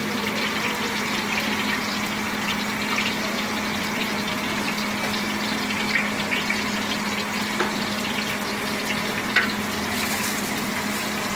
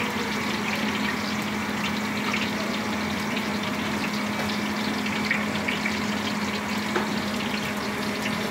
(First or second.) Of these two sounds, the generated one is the first